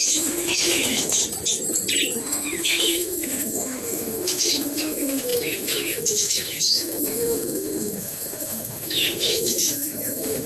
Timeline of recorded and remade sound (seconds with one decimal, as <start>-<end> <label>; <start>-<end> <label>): 0.0-1.2 remade; 1.2-2.2 recorded; 2.2-10.5 remade